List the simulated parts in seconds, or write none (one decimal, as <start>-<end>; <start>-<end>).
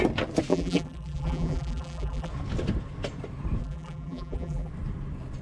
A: 0.5-2.3; 3.6-4.7